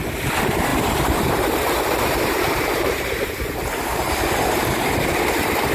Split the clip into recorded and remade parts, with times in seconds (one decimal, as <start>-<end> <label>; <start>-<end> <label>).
0.0-0.7 recorded; 0.7-4.1 remade; 4.1-5.7 recorded